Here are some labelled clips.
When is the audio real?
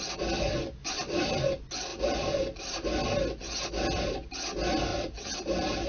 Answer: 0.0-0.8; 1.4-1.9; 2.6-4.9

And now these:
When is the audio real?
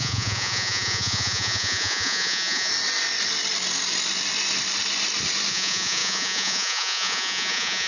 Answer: 2.7-5.5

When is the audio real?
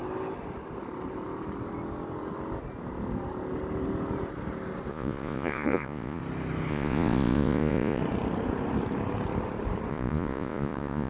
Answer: 0.0-4.9; 6.2-6.7; 8.0-9.9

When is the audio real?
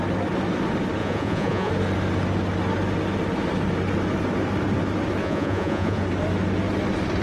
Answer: 0.0-1.0; 1.7-5.2; 6.0-7.2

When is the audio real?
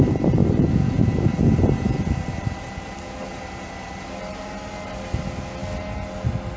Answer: 0.0-6.6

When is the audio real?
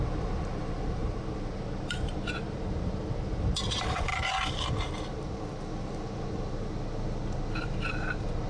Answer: 4.1-7.6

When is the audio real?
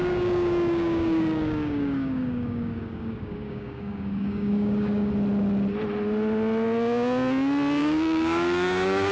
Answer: 5.1-7.8